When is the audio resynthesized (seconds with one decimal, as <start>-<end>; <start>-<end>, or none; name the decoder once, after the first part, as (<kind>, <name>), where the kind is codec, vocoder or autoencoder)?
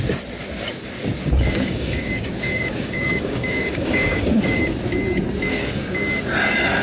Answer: 1.2-4.6 (codec, DAC); 5.5-6.2